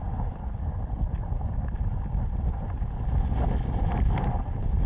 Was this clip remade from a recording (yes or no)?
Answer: no